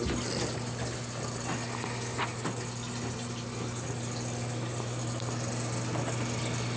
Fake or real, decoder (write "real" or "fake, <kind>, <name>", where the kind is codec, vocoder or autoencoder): real